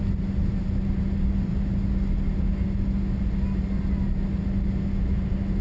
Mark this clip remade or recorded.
recorded